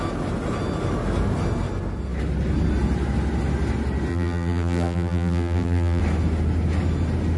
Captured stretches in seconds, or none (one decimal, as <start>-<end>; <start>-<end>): 0.0-4.1; 6.0-7.4